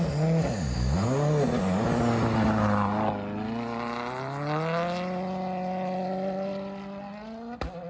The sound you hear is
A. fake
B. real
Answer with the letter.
B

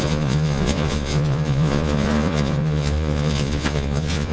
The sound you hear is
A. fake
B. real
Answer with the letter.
A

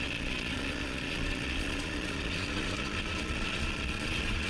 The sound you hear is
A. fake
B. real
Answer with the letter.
A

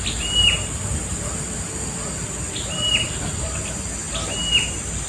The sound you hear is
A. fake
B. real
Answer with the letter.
B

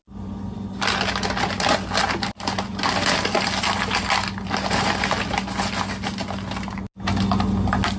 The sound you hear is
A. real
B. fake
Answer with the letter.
A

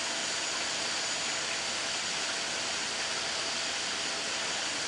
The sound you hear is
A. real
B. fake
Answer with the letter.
A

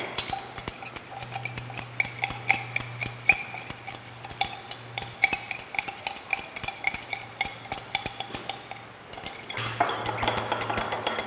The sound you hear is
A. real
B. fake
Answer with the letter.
A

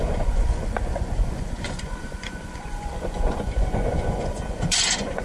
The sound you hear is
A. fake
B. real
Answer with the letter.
A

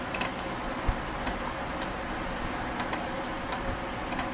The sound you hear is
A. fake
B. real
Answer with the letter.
B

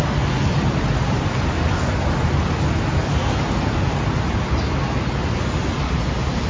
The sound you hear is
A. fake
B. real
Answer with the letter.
B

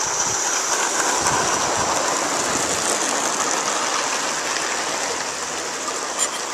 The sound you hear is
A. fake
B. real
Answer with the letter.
B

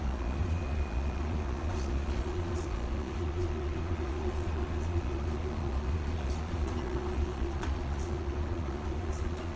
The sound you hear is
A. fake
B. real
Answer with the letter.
A